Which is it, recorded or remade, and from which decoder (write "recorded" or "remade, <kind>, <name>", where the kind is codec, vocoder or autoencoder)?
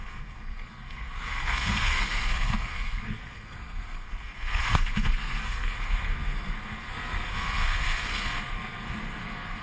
remade, codec, SNAC